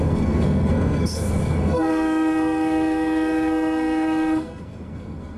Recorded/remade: remade